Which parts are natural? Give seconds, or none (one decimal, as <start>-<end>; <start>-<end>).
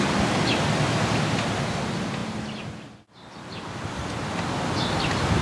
0.0-5.4